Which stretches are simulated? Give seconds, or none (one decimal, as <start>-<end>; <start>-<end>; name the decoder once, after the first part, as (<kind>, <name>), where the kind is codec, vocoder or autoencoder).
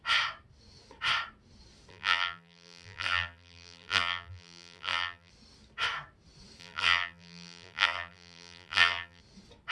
1.9-5.3 (vocoder, BigVGAN v2); 6.6-9.2